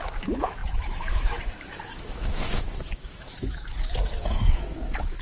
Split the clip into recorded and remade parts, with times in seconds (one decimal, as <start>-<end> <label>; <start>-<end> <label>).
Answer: 0.0-5.2 remade